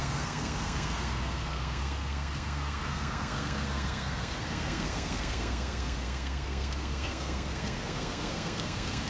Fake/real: fake